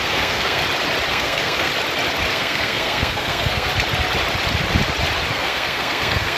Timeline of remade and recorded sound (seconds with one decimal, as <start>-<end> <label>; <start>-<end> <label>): 0.0-0.6 remade; 0.6-1.1 recorded; 1.1-1.7 remade; 1.7-2.3 recorded; 2.3-3.7 remade; 3.7-5.3 recorded; 5.3-6.4 remade